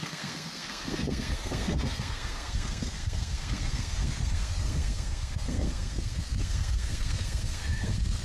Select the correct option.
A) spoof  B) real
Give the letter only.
A